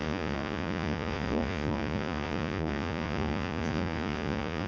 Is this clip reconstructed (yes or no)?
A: yes